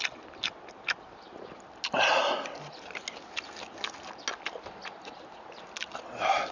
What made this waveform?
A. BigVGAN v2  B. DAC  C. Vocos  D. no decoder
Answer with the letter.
D